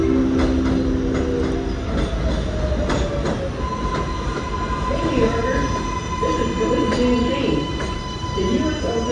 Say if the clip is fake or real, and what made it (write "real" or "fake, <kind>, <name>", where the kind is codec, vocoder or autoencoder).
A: real